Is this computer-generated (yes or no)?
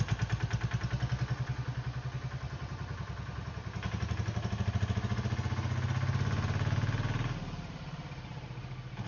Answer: no